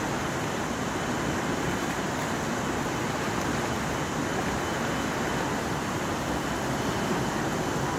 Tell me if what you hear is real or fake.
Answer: real